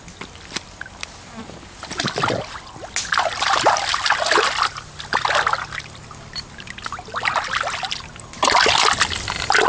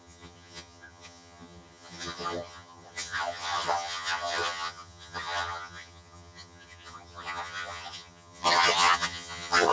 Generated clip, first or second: second